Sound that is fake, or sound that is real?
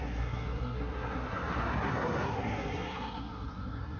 fake